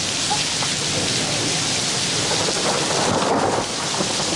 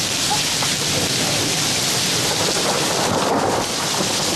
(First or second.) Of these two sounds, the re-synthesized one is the second